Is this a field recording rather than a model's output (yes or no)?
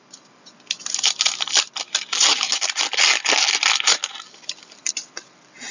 yes